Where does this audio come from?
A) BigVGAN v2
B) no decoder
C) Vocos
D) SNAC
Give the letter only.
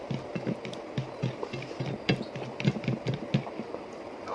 B